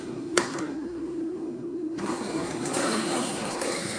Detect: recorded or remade remade